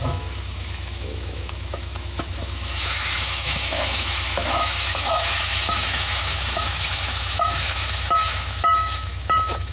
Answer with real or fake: fake